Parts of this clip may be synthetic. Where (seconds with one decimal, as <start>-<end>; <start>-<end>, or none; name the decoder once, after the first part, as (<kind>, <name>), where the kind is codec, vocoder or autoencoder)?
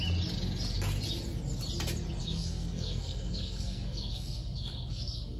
2.2-5.4 (codec, SNAC)